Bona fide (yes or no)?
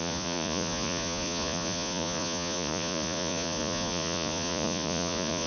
no